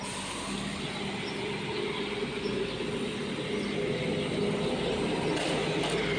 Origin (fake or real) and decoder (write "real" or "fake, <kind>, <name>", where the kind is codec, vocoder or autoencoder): real